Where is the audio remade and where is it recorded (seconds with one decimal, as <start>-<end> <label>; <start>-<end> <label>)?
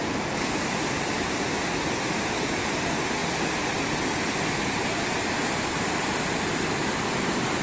0.0-7.6 recorded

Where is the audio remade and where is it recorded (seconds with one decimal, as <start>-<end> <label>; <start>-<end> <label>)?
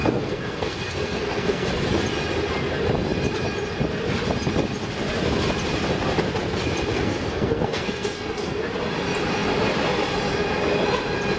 0.0-1.7 remade; 1.7-6.9 recorded; 6.9-8.6 remade; 8.6-11.4 recorded